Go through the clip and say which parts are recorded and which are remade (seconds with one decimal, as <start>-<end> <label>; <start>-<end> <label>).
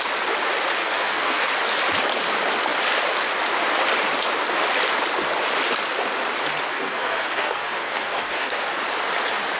0.0-0.8 recorded; 0.8-1.5 remade; 1.5-6.7 recorded; 6.7-8.7 remade; 8.7-9.6 recorded